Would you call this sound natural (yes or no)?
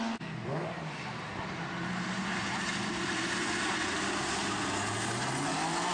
yes